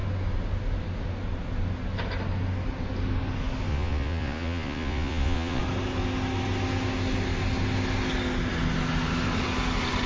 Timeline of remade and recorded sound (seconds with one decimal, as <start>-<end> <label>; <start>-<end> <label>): 0.0-3.7 recorded; 3.7-5.6 remade; 5.6-10.1 recorded

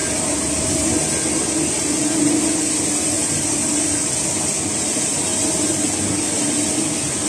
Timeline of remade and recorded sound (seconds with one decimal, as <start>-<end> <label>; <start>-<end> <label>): 0.0-7.3 recorded

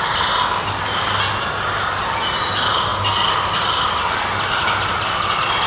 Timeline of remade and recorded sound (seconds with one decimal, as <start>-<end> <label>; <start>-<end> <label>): 0.0-5.7 recorded

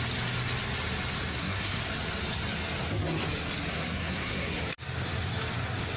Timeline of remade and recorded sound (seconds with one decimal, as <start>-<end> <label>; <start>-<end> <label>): 0.0-1.3 recorded; 1.3-1.8 remade; 1.8-3.7 recorded; 3.7-4.6 remade; 4.6-6.0 recorded